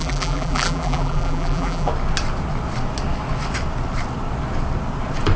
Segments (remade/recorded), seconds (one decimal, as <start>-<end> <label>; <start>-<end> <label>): 0.0-1.9 remade; 1.9-5.4 recorded